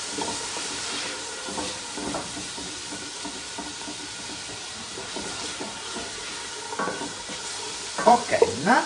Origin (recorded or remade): remade